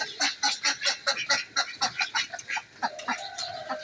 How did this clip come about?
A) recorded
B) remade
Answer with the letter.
A